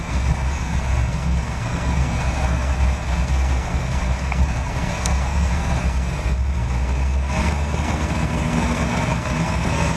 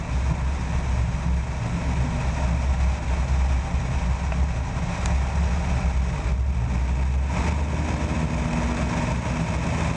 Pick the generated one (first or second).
first